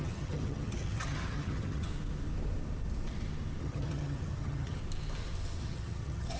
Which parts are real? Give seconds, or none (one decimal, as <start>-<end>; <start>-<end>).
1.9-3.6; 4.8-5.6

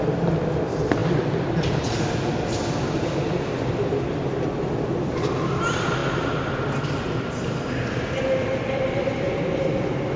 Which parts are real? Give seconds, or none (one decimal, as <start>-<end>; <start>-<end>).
0.0-10.2

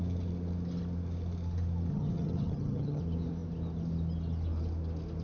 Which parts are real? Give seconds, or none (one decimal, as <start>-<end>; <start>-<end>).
0.0-1.9; 3.0-5.2